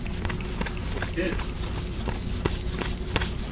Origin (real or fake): real